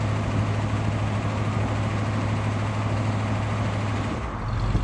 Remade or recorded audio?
recorded